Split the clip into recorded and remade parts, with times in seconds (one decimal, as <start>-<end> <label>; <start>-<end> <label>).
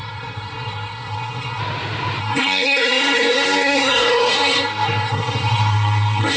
0.0-1.6 remade; 1.6-2.2 recorded; 2.2-6.4 remade